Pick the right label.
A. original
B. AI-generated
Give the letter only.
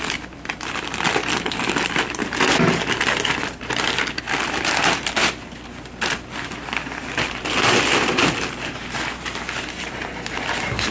B